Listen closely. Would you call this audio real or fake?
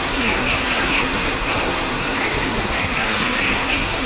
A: fake